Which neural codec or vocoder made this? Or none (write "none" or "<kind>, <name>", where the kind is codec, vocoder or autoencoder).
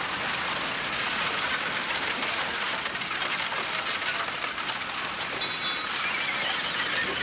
none